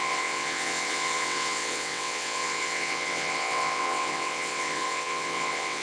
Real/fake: fake